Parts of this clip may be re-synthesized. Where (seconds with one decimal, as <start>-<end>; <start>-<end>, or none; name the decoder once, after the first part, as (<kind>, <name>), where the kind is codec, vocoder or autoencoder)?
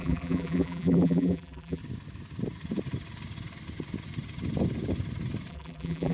0.0-1.8 (vocoder, BigVGAN v2); 5.5-6.1